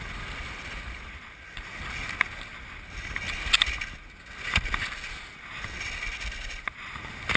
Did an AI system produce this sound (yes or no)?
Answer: no